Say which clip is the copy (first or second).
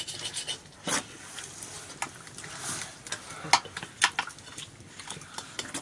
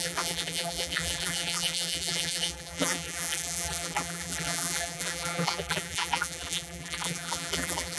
second